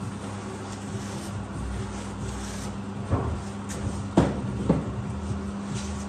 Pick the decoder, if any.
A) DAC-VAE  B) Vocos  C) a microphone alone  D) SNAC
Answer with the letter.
C